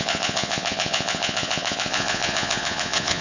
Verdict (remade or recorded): remade